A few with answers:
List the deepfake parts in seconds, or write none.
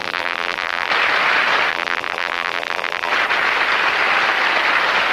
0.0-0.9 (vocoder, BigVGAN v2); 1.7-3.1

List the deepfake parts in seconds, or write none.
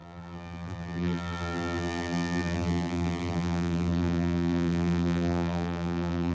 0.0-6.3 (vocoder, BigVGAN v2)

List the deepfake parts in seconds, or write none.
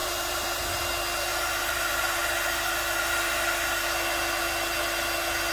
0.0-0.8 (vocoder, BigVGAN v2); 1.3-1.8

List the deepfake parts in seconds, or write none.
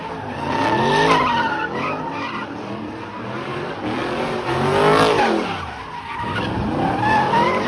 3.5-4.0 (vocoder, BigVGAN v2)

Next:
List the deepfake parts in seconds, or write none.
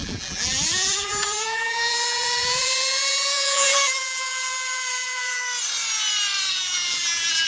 0.0-5.4 (vocoder, BigVGAN v2); 6.5-7.5